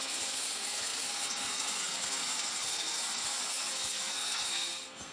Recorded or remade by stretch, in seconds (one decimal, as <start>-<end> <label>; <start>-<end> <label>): 0.0-5.1 remade